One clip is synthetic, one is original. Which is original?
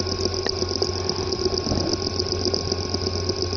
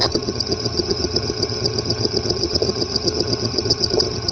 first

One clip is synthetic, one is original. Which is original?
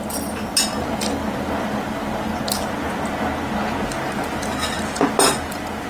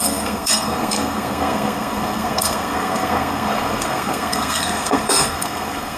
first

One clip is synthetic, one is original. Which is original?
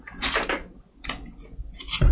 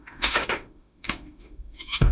first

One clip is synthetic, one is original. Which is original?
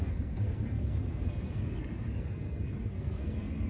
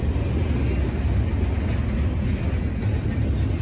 second